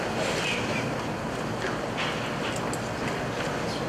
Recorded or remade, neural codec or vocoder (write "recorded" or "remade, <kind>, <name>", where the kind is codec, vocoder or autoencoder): recorded